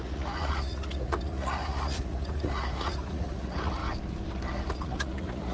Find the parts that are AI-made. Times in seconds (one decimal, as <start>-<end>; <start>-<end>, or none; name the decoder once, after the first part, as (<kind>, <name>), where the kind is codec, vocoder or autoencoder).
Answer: 0.0-3.8 (vocoder, Vocos); 4.7-5.5